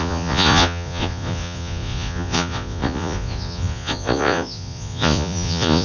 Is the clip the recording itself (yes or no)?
no